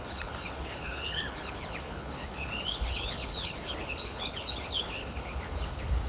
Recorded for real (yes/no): no